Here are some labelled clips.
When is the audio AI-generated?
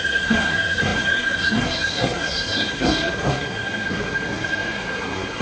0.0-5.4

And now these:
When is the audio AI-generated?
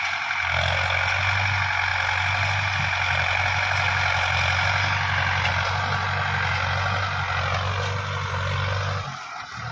none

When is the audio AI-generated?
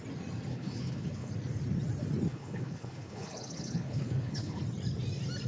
0.5-1.3; 2.3-4.6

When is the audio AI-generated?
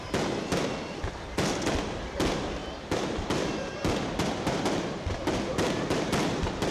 none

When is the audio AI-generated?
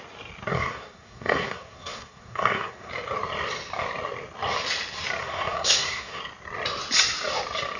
0.5-2.9; 5.2-6.2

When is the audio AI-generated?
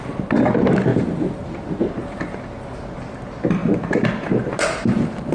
none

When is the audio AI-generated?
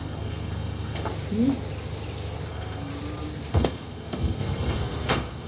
0.0-1.1; 2.5-2.9; 3.5-5.5